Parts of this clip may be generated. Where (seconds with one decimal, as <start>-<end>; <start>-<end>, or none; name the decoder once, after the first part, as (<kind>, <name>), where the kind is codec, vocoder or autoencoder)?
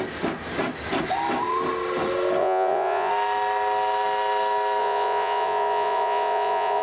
2.4-3.1 (vocoder, Vocos); 4.8-6.8